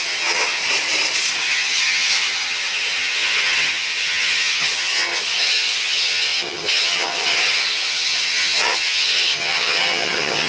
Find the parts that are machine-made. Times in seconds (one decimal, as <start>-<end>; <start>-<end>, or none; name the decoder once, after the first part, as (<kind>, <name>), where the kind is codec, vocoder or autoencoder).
0.0-0.6 (vocoder, HiFi-GAN); 1.4-10.5